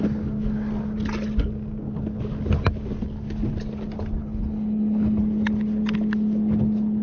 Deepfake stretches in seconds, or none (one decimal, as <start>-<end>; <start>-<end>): 4.2-5.2